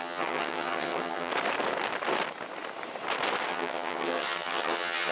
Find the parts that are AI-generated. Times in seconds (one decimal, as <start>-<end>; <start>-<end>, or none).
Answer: 0.0-1.3; 3.5-5.1